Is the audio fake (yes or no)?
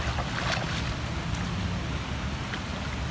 no